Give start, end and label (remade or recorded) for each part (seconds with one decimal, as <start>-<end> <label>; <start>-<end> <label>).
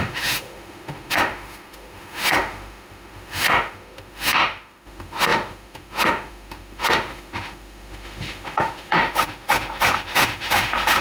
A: 0.0-11.0 remade